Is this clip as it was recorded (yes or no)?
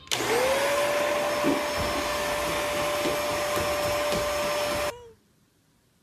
yes